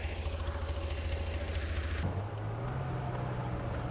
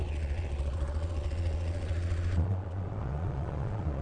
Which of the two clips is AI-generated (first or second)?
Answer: second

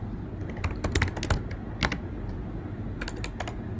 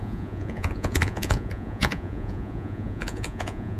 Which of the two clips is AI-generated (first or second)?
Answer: second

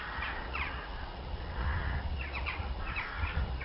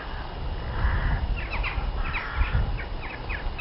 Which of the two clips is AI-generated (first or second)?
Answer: first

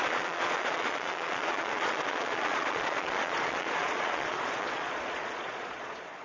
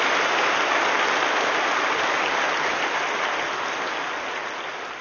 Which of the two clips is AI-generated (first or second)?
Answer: first